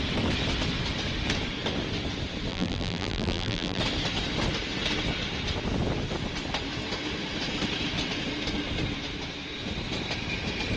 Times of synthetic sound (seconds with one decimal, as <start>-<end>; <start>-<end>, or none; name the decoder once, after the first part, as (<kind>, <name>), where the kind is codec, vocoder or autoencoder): 2.5-3.8 (vocoder, BigVGAN v2)